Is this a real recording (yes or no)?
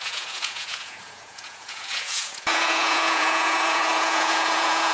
no